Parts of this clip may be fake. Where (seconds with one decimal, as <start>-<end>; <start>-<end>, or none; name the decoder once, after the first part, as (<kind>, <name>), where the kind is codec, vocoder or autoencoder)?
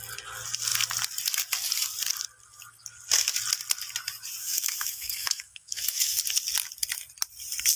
4.4-6.2 (autoencoder, DAC-VAE)